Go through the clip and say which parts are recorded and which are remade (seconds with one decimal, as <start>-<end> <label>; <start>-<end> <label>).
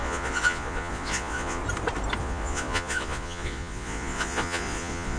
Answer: 0.0-1.6 remade; 1.6-2.2 recorded; 2.2-5.2 remade